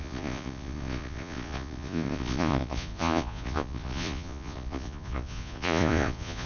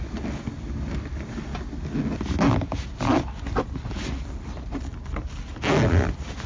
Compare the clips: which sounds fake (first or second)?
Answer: first